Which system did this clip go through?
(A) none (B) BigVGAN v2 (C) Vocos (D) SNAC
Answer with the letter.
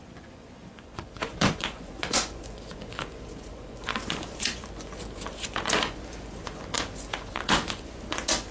C